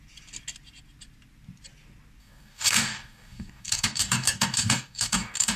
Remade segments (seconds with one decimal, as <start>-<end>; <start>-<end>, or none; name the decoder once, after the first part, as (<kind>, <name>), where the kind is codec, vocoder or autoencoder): 2.2-5.6 (codec, DAC)